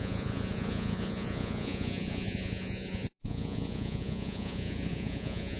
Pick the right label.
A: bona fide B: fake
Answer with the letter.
B